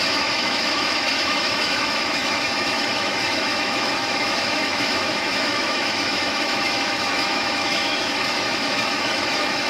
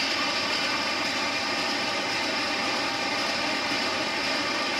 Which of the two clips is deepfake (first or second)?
first